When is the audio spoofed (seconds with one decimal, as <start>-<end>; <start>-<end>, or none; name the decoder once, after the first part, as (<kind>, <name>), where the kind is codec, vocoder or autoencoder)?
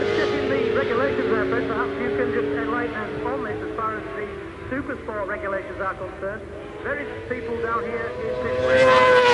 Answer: none